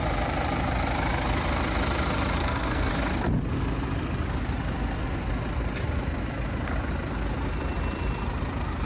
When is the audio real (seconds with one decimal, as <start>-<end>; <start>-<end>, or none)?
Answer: 0.0-2.4; 2.9-8.8